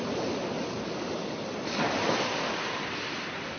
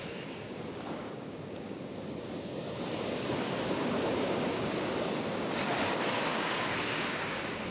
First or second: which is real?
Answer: first